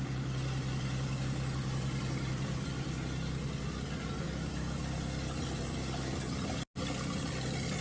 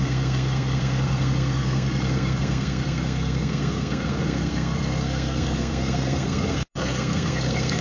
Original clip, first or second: first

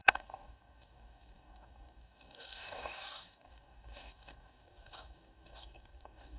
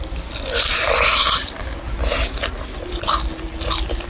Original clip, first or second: second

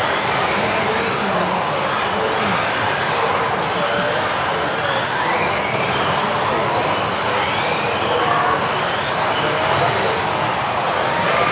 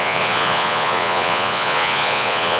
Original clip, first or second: first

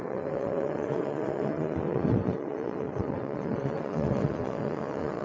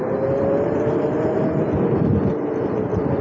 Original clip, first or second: second